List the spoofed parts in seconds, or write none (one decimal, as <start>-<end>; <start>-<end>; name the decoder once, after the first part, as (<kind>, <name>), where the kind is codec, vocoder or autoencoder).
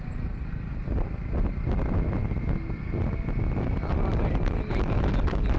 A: none